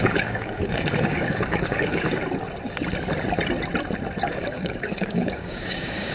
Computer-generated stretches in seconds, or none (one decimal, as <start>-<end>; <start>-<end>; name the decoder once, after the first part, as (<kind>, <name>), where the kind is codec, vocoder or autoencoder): 0.0-2.2 (codec, DAC); 4.2-6.1